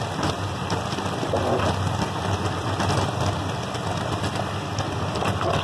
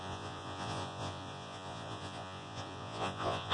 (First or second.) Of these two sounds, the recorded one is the first